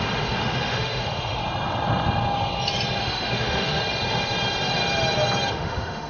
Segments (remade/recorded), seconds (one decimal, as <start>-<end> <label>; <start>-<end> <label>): 0.0-1.4 remade; 1.4-3.0 recorded; 3.0-3.8 remade; 3.8-5.5 recorded; 5.5-6.1 remade